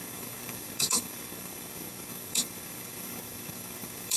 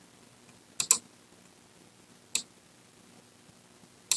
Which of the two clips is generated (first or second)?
first